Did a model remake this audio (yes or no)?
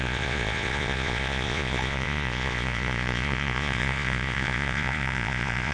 yes